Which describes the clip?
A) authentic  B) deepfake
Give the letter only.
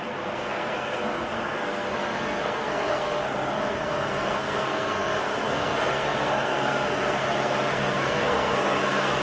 B